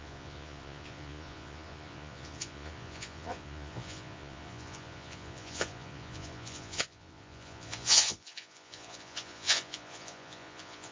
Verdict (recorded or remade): remade